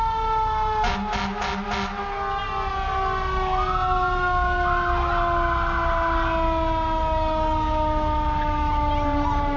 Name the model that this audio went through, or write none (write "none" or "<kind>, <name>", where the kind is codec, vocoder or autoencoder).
none